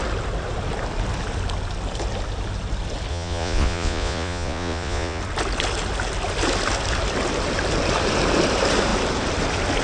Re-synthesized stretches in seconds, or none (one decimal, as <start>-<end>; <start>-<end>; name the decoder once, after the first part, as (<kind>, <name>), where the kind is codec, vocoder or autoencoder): 3.1-5.2 (vocoder, Vocos)